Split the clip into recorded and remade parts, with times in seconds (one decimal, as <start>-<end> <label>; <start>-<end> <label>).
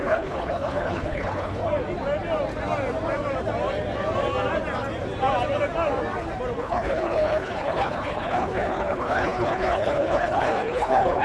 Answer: 0.0-1.6 remade; 1.6-6.6 recorded; 6.6-11.2 remade